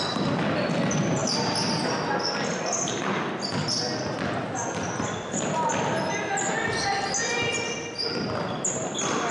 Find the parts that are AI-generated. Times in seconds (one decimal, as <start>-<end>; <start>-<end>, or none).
none